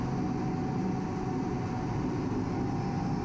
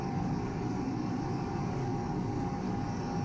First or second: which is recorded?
first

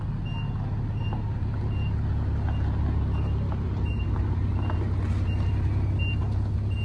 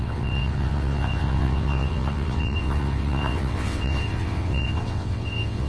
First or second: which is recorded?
first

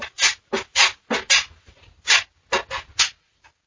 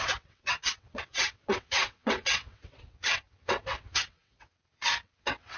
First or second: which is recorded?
first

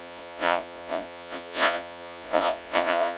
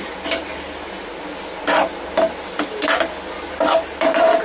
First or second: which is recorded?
second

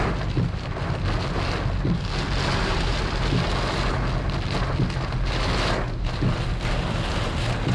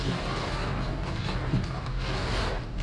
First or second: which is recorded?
first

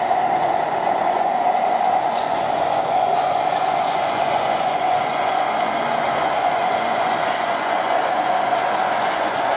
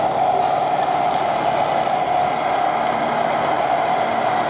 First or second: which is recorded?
second